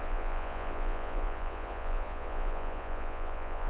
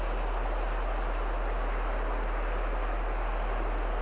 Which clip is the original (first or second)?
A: second